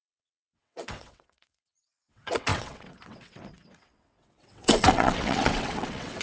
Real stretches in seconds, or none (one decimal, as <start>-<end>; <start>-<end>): none